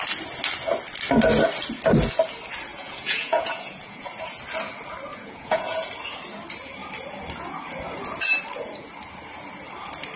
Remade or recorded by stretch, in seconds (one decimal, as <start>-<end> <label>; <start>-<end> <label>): 0.0-2.7 recorded; 2.7-4.1 remade; 4.1-5.1 recorded; 5.1-5.9 remade; 5.9-10.2 recorded